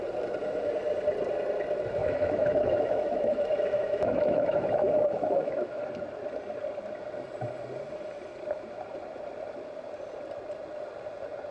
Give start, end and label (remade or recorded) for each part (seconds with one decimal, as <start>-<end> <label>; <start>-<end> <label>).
0.0-2.0 recorded; 2.0-5.9 remade; 5.9-11.5 recorded